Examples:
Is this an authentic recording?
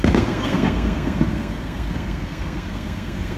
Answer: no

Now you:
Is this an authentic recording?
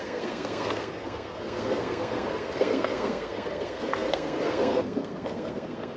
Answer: no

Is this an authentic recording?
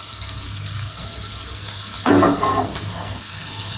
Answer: no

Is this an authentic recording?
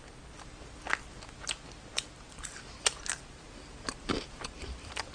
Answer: yes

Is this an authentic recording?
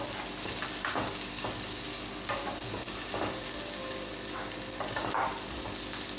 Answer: yes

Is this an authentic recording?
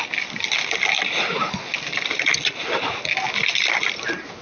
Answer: yes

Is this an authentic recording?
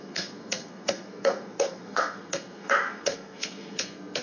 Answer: no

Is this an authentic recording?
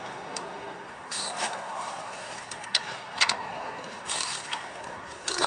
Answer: no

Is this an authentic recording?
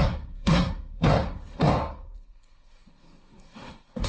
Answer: no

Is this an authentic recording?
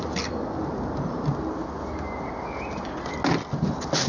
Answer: yes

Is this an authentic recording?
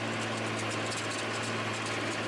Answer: yes